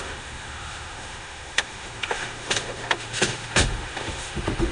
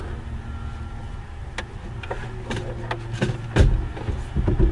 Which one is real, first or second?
second